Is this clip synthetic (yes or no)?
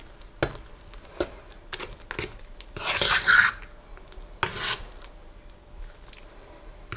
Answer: no